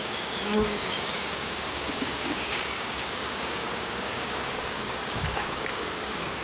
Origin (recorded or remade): remade